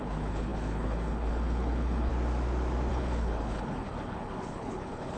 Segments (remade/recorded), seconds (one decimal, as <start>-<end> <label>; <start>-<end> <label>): 0.0-2.1 remade; 2.1-2.9 recorded; 2.9-5.2 remade